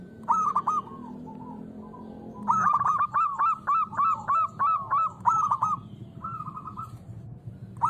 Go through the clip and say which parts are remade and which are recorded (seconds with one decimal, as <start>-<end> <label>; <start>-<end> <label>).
0.0-7.9 recorded